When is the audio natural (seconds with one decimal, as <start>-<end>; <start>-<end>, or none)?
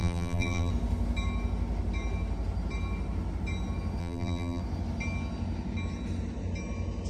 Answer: 0.7-4.0; 4.6-7.1